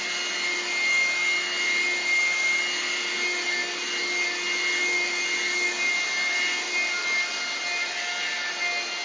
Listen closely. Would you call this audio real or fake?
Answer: real